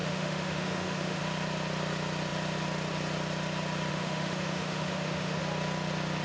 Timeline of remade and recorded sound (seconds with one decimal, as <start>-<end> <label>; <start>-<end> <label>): 0.0-1.2 remade; 1.2-3.9 recorded; 3.9-5.4 remade; 5.4-6.2 recorded